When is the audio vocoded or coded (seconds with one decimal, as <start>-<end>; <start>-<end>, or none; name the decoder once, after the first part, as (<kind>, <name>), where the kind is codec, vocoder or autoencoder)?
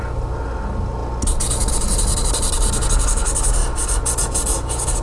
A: none